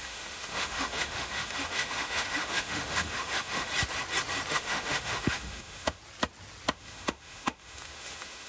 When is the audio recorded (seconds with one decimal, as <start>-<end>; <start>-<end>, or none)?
3.7-4.5; 6.0-6.7